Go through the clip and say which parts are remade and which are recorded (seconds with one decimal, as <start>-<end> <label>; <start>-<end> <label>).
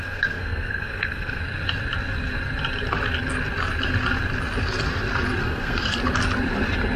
0.0-1.4 remade; 1.4-5.4 recorded; 5.4-6.0 remade; 6.0-7.0 recorded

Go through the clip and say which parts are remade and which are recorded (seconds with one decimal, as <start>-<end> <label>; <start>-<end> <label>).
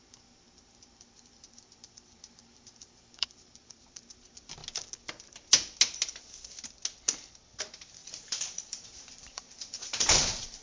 0.0-4.6 remade; 4.6-7.6 recorded; 7.6-10.6 remade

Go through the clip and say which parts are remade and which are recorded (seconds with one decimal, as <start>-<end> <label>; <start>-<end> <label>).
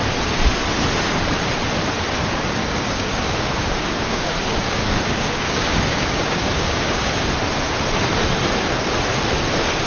0.0-2.6 recorded; 2.6-7.3 remade; 7.3-9.9 recorded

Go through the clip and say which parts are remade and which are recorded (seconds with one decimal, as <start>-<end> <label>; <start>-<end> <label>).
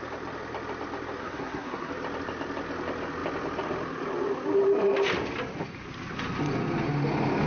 0.0-1.2 recorded; 1.2-1.9 remade; 1.9-7.5 recorded